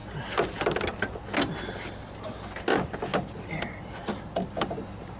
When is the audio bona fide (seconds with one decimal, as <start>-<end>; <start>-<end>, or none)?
0.0-5.2